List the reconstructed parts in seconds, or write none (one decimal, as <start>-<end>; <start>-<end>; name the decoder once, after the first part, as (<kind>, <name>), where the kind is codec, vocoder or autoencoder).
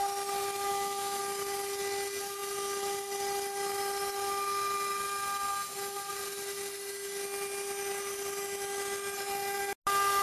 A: 0.7-1.2 (autoencoder, DAC-VAE)